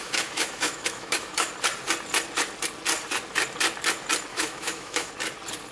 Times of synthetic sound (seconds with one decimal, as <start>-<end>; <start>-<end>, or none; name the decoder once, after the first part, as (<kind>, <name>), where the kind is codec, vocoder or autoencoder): 0.0-1.5 (autoencoder, DAC-VAE); 4.3-5.1